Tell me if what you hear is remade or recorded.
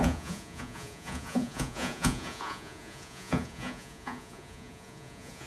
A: remade